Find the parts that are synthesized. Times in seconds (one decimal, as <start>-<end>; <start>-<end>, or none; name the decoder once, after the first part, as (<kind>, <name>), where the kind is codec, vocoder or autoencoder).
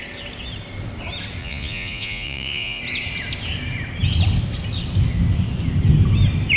1.4-2.8 (vocoder, Vocos)